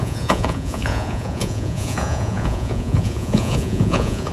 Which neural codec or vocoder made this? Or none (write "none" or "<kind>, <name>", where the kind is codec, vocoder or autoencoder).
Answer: vocoder, Vocos